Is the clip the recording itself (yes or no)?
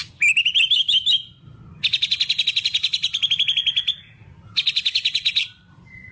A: yes